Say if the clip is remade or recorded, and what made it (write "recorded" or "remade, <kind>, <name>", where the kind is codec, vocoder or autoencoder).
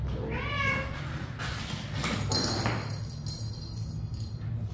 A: recorded